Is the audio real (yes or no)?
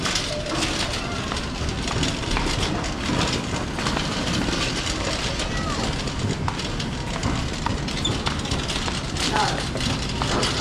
yes